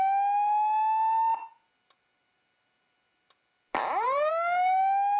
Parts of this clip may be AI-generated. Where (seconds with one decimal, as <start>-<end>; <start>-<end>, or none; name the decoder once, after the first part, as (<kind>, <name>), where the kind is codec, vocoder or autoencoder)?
3.7-4.3 (vocoder, BigVGAN v2)